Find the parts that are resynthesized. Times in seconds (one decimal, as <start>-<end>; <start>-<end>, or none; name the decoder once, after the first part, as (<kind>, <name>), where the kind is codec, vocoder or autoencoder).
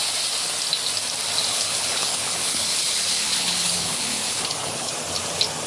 1.5-4.9 (codec, HILCodec)